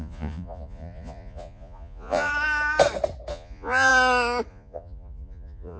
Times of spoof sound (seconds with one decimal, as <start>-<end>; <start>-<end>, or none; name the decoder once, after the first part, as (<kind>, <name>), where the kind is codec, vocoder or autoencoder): 0.0-2.3 (vocoder, Vocos); 3.3-3.9; 4.5-5.8